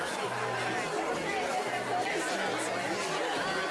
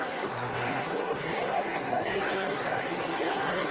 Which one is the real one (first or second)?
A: first